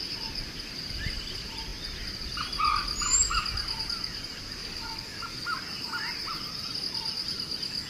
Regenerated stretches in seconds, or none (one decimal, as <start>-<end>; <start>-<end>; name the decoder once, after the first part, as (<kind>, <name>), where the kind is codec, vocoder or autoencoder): 4.6-5.2 (codec, DAC)